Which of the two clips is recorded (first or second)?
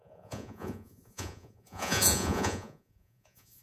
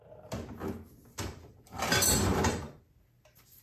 second